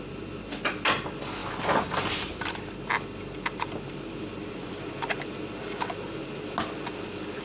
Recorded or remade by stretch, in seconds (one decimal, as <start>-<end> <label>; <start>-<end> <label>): 0.0-7.4 recorded